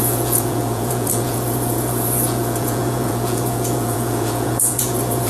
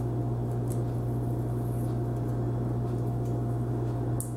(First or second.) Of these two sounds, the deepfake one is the first